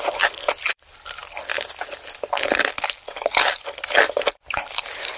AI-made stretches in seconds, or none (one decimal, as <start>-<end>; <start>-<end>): 0.0-1.2; 4.3-5.2

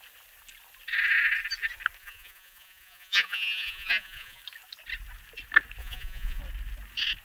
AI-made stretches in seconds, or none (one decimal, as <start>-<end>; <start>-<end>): 2.0-4.4; 5.8-6.4

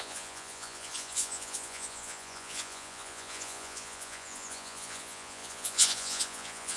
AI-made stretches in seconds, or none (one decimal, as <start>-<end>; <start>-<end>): 0.0-6.8

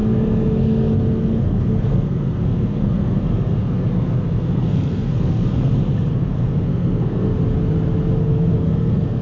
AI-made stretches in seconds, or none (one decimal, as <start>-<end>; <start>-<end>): 0.0-5.7; 6.3-7.3; 8.2-9.2

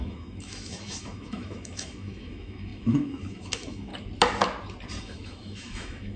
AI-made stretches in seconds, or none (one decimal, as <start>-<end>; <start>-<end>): 0.0-3.9; 5.0-6.2